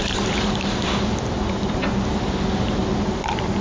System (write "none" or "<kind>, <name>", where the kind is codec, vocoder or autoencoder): vocoder, BigVGAN v2